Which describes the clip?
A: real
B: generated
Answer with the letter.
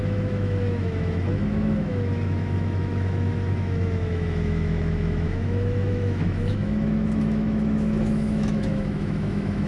B